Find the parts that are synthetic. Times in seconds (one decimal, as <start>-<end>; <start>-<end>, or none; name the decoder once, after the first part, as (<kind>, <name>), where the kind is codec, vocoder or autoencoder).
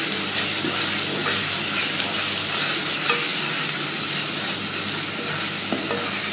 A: none